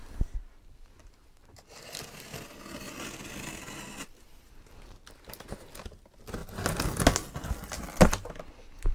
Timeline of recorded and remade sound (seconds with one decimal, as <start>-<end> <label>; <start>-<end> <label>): 0.0-8.9 recorded